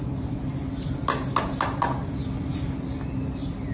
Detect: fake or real real